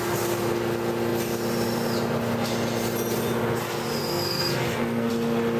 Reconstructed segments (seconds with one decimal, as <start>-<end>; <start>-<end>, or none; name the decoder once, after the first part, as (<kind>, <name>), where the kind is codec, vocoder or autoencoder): 4.1-5.1 (codec, SNAC)